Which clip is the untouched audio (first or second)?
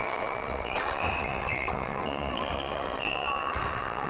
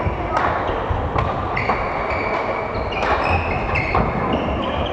second